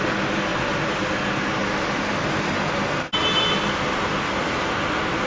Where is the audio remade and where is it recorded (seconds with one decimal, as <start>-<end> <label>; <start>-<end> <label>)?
0.0-5.3 recorded